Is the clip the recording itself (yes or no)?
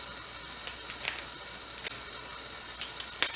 yes